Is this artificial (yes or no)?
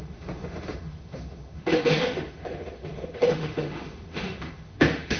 yes